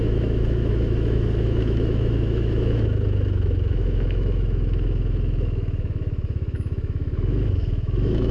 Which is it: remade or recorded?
remade